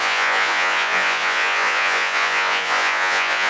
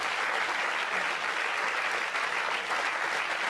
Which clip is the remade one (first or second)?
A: first